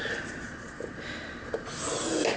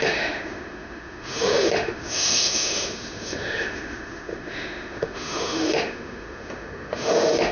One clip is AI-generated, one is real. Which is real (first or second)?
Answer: first